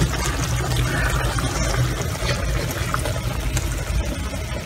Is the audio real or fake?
real